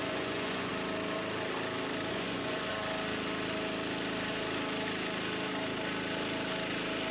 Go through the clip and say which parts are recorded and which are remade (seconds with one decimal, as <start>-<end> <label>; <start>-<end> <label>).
0.0-0.7 remade; 0.7-2.1 recorded; 2.1-2.7 remade; 2.7-7.1 recorded